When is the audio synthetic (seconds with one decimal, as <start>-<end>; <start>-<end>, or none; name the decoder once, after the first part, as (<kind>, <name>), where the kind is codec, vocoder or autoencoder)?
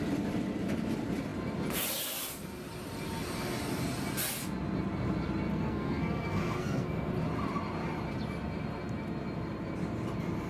5.5-7.1 (codec, SNAC)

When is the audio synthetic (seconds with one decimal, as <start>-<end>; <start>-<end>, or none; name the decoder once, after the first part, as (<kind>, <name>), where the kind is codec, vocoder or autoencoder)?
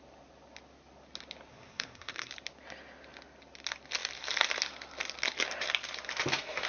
1.5-2.3 (codec, SNAC)